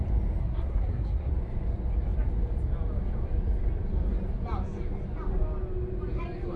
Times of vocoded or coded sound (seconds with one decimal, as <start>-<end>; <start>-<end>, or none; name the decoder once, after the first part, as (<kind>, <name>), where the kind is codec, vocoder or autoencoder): 0.4-1.3 (codec, SNAC)